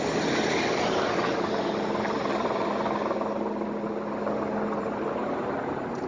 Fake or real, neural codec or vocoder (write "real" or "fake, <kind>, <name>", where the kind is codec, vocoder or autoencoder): real